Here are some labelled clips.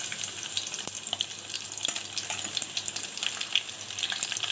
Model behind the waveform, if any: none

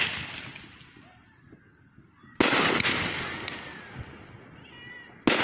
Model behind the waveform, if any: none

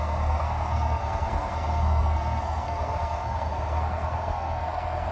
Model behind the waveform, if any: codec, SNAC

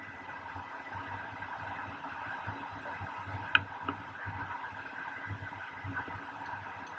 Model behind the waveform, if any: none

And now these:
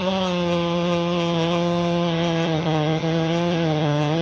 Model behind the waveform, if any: vocoder, HiFi-GAN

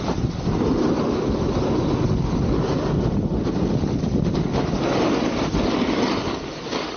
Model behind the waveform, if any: none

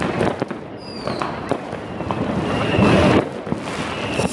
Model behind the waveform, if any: none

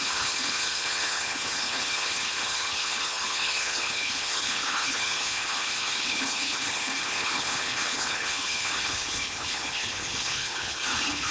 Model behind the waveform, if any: codec, HILCodec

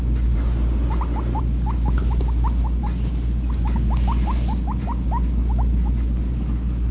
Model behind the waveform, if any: none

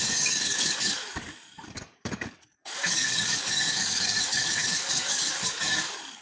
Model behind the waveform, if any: codec, DAC